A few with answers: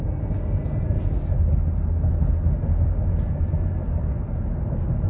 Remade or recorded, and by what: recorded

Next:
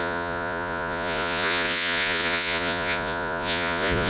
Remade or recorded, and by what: remade, vocoder, Vocos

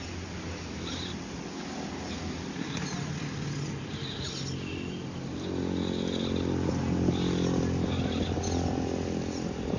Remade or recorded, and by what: recorded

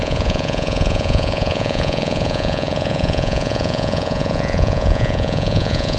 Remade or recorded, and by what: remade, vocoder, Vocos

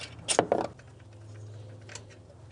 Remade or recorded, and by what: recorded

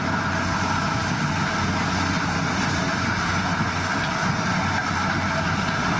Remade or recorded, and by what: recorded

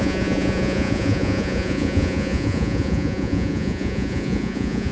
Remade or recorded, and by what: remade, vocoder, Vocos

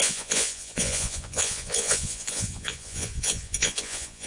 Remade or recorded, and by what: remade, vocoder, Vocos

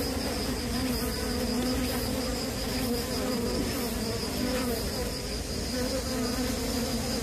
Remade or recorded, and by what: recorded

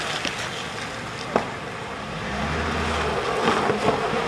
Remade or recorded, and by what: recorded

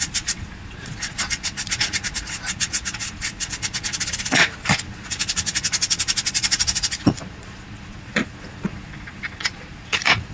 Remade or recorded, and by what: remade, vocoder, Vocos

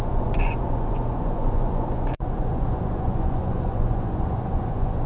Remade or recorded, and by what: remade, vocoder, Vocos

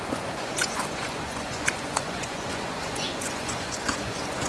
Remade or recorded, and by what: remade, vocoder, Vocos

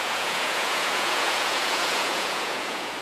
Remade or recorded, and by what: remade, vocoder, Vocos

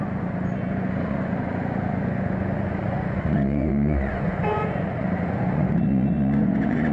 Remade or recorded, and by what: remade, vocoder, Vocos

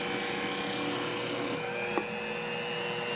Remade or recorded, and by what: recorded